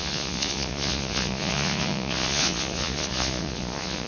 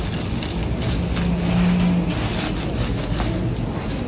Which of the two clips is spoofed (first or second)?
first